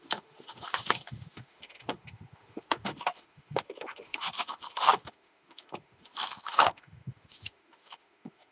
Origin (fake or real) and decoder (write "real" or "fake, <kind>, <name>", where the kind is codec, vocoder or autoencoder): fake, autoencoder, DAC-VAE